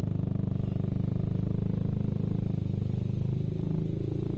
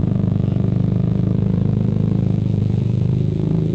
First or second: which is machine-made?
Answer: second